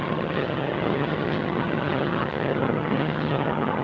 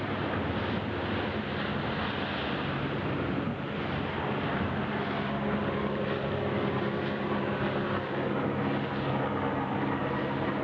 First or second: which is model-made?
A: first